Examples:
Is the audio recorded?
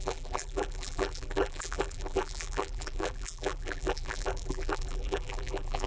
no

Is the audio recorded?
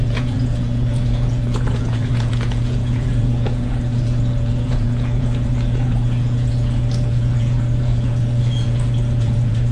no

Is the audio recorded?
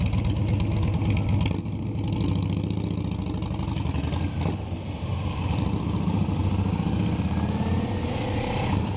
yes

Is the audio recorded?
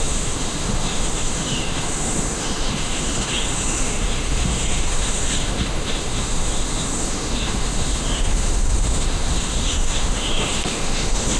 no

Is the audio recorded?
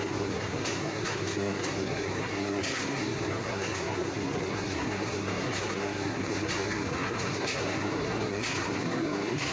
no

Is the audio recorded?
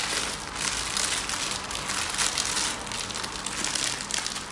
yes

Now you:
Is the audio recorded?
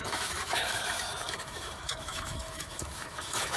no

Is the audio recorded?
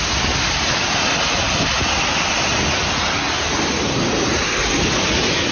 yes